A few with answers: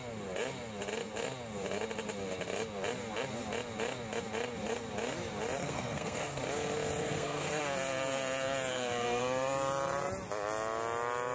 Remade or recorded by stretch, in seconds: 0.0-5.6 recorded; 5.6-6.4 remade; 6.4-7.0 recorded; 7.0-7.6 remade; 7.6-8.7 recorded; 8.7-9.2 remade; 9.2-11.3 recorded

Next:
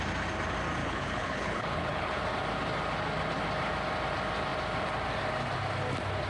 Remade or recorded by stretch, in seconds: 0.0-0.8 recorded; 0.8-2.2 remade; 2.2-6.3 recorded